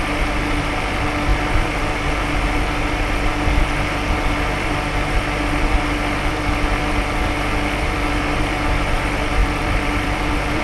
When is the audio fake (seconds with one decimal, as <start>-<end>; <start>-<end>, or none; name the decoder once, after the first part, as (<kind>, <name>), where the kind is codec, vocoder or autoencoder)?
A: 9.4-10.6 (vocoder, BigVGAN v2)